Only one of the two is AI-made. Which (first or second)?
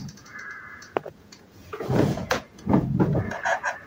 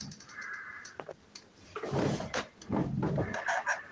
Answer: first